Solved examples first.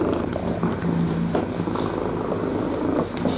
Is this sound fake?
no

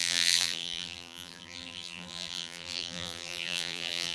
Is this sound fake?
yes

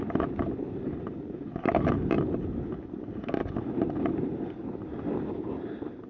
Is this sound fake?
no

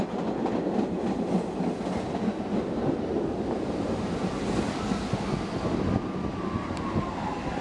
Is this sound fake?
no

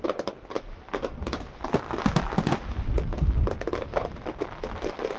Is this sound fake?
no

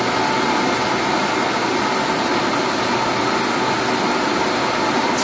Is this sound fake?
no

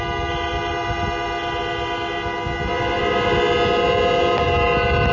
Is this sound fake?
no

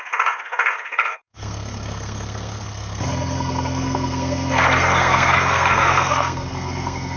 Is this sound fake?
yes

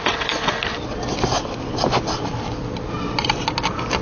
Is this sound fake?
no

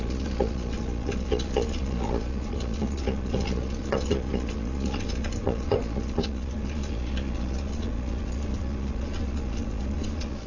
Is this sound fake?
yes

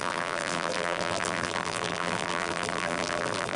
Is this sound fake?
yes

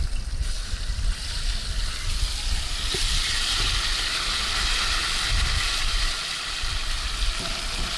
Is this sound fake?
no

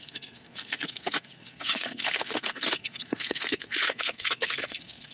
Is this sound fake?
yes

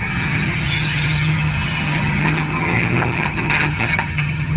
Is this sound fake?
yes